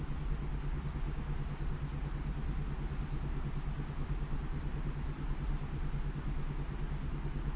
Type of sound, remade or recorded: recorded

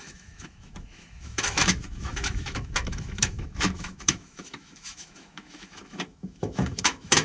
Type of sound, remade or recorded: remade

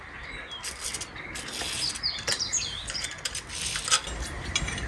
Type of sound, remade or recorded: recorded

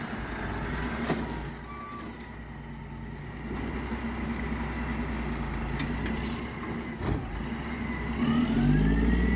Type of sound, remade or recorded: recorded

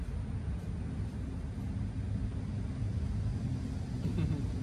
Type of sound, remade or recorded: recorded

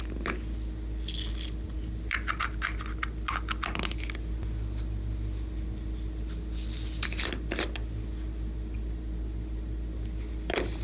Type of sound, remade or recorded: recorded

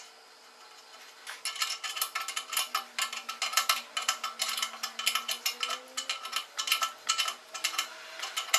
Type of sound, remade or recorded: recorded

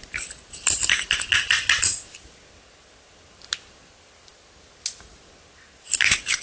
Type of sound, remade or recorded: recorded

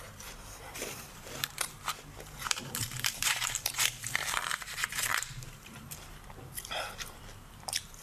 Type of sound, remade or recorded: remade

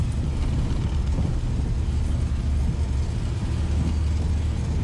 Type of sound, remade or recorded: recorded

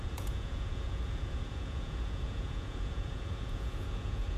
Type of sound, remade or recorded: remade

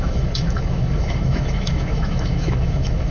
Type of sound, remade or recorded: remade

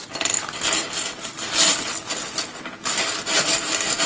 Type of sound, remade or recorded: recorded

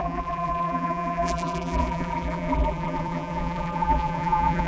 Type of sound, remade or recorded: remade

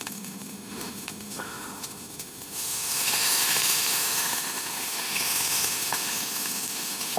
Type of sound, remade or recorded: remade